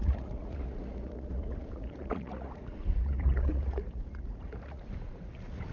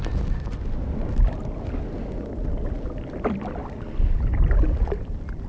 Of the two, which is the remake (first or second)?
first